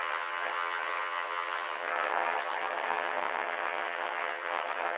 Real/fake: fake